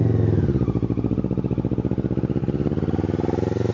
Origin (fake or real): real